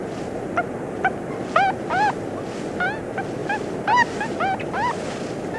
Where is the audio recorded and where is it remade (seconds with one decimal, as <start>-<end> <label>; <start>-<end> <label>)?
0.0-5.6 recorded